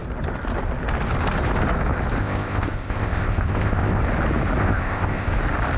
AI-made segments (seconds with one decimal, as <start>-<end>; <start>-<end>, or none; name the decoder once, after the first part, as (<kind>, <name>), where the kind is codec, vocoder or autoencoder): 2.2-4.0 (codec, ZipCodec); 4.6-5.3